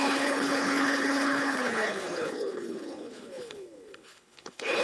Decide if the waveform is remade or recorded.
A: remade